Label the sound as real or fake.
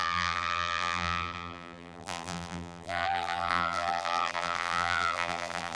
fake